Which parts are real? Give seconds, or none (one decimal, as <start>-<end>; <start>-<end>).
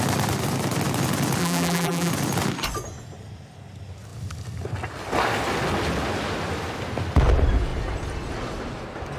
0.0-1.4; 2.1-9.2